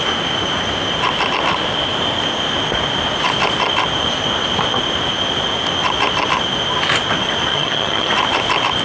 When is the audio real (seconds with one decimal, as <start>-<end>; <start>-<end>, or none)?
0.0-7.5; 8.1-8.8